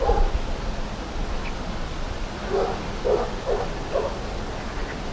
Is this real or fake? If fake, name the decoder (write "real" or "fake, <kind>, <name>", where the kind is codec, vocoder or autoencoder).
real